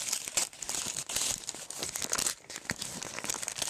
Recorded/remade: recorded